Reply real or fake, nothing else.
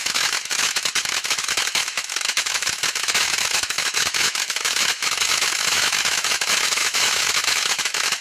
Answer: fake